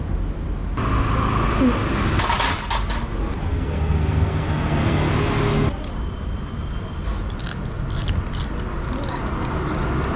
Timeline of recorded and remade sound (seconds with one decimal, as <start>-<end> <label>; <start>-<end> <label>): 0.0-3.5 recorded; 3.5-5.1 remade; 5.1-10.2 recorded